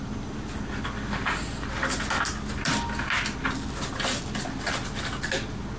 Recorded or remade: recorded